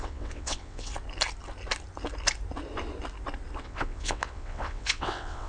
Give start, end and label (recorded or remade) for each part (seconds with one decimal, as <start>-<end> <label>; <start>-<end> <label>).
0.0-0.9 remade; 0.9-3.6 recorded; 3.6-5.5 remade